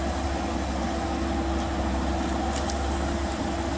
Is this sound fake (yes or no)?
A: no